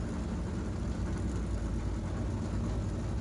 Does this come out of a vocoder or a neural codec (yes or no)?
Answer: no